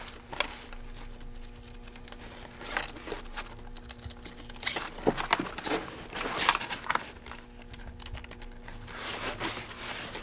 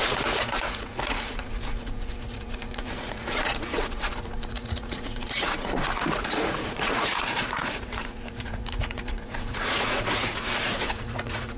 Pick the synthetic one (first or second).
second